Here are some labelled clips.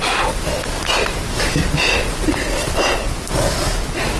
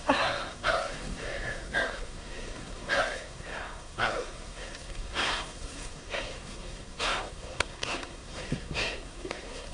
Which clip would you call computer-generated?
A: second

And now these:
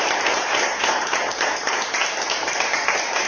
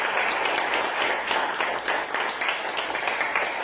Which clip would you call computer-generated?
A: first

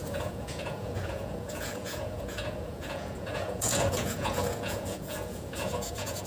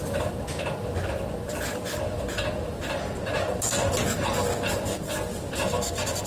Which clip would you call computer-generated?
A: first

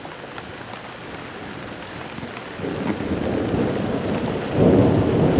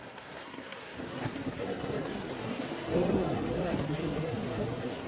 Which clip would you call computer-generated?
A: second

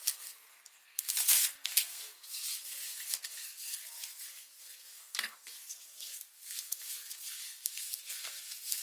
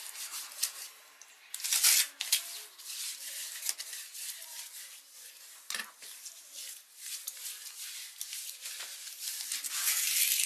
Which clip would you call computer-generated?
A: first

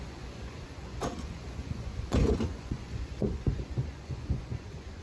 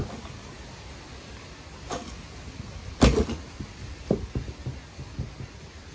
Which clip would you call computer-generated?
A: first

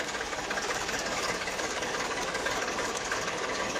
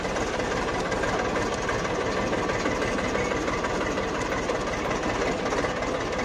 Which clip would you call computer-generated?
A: first